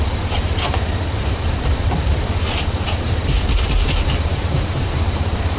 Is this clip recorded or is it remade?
remade